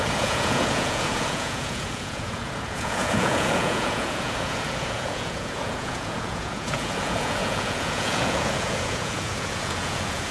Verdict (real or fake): fake